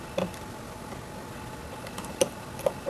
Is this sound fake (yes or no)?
no